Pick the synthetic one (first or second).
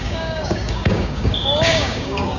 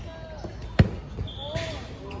first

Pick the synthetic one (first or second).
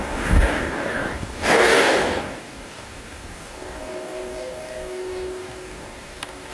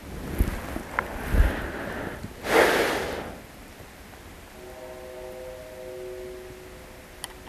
first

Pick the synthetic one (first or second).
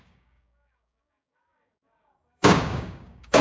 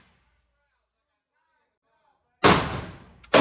first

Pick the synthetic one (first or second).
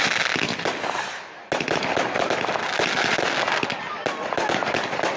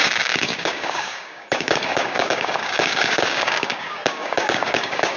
second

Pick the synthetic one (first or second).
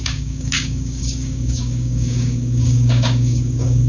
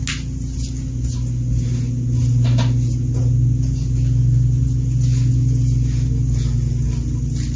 first